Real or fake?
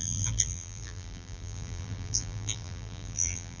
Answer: fake